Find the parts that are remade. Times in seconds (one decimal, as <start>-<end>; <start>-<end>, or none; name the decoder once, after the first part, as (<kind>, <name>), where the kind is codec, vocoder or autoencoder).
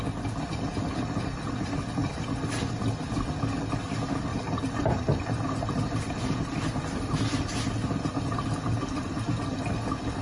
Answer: 4.3-6.4 (vocoder, BigVGAN v2)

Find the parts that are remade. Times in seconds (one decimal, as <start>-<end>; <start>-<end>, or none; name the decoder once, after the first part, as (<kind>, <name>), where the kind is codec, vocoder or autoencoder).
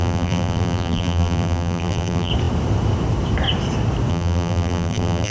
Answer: 0.0-2.3 (vocoder, BigVGAN v2); 4.1-5.3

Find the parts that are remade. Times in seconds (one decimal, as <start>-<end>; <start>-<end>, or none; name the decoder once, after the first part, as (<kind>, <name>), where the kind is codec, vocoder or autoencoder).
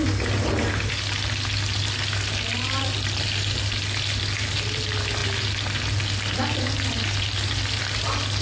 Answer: none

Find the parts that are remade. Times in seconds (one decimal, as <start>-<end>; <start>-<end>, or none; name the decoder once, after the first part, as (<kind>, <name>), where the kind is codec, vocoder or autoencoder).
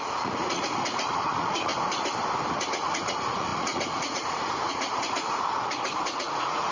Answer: 0.0-1.7 (vocoder, Vocos); 2.7-6.7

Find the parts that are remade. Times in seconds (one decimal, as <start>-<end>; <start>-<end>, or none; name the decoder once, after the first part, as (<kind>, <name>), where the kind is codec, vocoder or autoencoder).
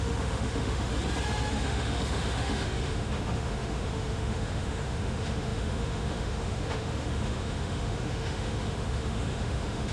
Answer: 0.0-0.9 (autoencoder, DAC-VAE); 1.5-9.9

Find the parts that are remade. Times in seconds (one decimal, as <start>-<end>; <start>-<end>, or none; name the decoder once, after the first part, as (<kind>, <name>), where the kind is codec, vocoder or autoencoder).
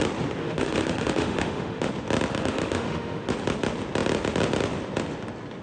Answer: 0.4-1.9 (autoencoder, DAC-VAE); 2.3-3.3